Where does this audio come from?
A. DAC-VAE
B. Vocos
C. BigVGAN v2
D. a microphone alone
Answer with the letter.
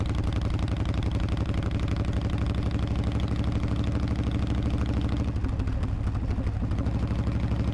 D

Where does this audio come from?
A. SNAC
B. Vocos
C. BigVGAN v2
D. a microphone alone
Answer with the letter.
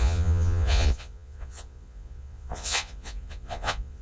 B